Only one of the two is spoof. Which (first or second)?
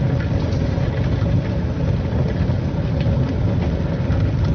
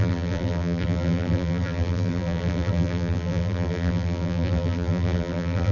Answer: second